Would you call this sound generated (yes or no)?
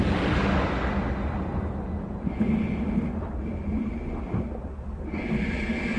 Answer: no